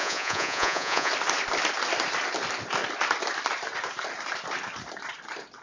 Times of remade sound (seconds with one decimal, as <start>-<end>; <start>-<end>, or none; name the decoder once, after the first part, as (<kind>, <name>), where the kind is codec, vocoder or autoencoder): 0.0-1.1 (vocoder, Vocos)